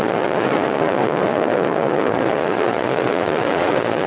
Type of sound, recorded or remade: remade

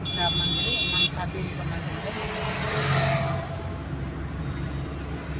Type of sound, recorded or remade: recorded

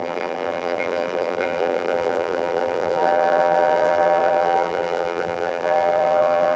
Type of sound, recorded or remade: remade